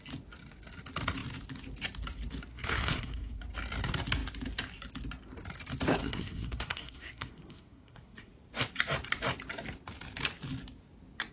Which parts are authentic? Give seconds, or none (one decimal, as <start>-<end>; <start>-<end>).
0.0-2.5; 3.4-5.9; 8.3-11.3